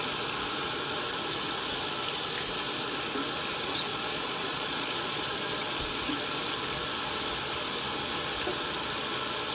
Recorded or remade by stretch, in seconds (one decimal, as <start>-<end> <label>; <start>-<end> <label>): 0.0-3.9 recorded; 3.9-6.1 remade; 6.1-9.5 recorded